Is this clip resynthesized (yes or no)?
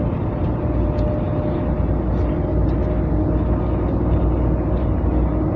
no